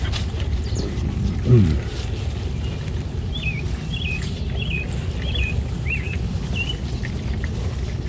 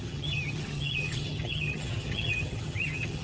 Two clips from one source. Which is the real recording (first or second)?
first